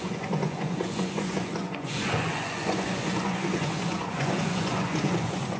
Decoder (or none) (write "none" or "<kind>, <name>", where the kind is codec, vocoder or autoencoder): vocoder, Vocos